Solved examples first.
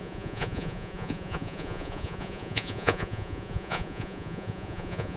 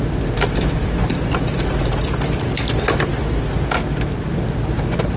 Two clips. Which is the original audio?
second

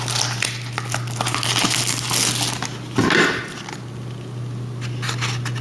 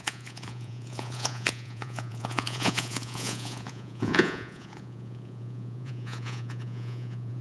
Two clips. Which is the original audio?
first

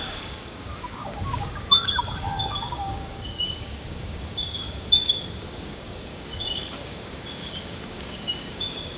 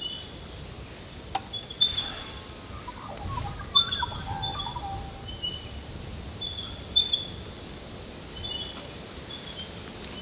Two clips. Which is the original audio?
second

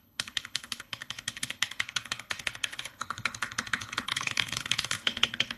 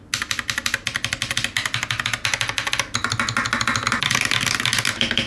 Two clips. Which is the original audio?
second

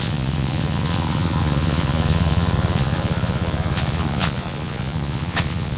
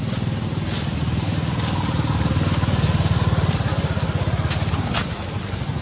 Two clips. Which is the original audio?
second